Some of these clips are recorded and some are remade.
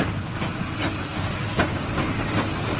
recorded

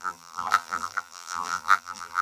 remade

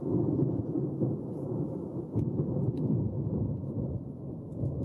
recorded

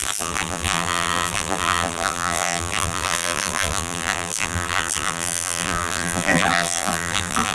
remade